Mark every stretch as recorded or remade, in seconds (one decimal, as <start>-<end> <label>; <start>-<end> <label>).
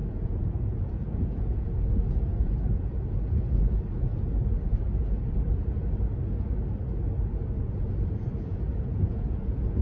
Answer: 0.0-4.1 remade; 4.1-7.6 recorded; 7.6-9.8 remade